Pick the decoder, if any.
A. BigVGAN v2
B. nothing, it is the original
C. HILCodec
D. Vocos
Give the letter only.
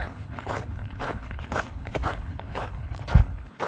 C